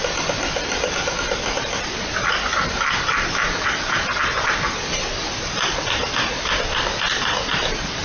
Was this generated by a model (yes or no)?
no